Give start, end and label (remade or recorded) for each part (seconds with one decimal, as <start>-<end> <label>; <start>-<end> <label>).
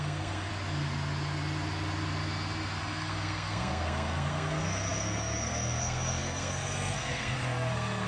0.0-0.5 remade; 0.5-2.8 recorded; 2.8-8.1 remade